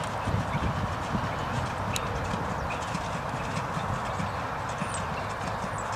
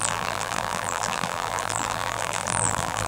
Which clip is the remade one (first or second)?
second